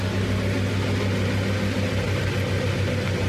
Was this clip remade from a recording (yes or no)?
no